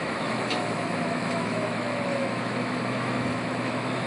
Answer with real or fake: fake